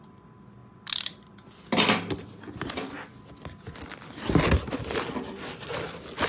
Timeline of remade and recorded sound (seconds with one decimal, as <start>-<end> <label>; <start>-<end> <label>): 0.0-6.3 recorded